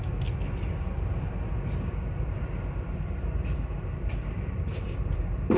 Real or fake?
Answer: real